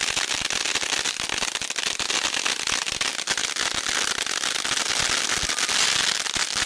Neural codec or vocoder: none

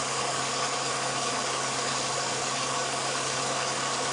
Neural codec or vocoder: codec, DAC